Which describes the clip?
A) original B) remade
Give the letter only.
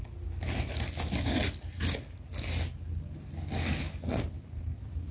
A